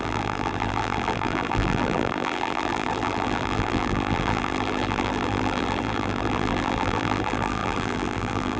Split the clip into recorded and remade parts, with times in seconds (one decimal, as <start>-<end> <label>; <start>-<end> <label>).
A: 0.0-8.6 remade